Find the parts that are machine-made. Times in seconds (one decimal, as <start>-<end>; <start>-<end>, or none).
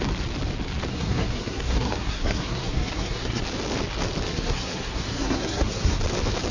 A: 0.9-3.4; 4.3-6.0